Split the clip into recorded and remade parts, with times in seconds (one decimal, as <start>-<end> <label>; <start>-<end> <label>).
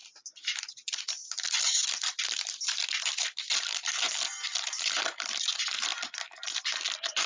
0.0-7.3 recorded